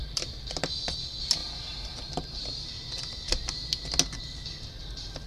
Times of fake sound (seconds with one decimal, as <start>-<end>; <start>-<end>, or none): 0.0-1.4; 4.2-5.3